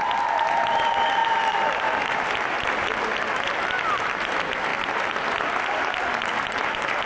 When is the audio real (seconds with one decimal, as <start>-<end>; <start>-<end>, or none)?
0.0-7.1

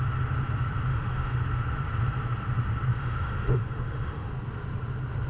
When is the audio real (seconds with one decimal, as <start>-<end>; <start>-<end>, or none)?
0.0-0.9; 1.4-2.9; 4.3-5.3

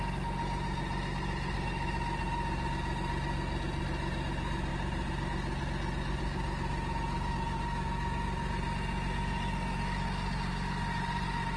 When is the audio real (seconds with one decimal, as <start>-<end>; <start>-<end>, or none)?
0.0-11.6